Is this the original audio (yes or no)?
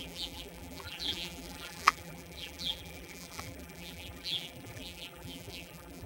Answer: no